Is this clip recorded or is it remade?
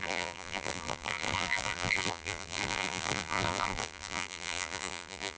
remade